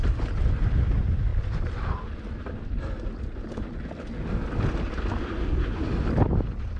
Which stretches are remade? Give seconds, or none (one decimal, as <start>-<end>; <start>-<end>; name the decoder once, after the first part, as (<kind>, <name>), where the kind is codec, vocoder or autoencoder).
none